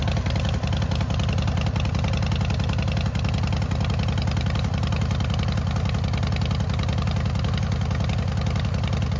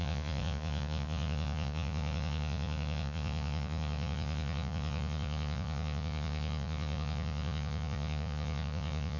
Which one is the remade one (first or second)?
second